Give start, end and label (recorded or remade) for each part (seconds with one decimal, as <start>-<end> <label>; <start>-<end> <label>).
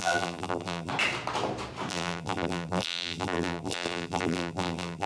0.0-0.9 remade; 0.9-1.9 recorded; 1.9-5.1 remade